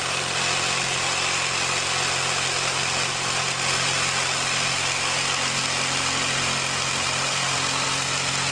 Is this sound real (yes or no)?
yes